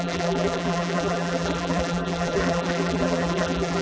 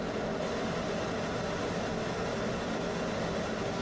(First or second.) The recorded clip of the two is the second